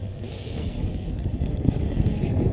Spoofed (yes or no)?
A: yes